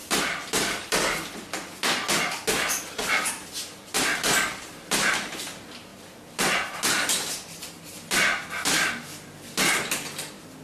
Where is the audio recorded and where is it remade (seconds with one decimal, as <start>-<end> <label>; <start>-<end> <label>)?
0.0-10.6 recorded